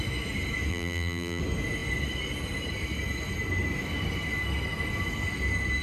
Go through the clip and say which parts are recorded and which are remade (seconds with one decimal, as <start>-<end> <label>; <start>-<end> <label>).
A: 0.0-0.7 recorded; 0.7-1.4 remade; 1.4-5.8 recorded